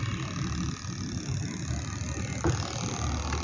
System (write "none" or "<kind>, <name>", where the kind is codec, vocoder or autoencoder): none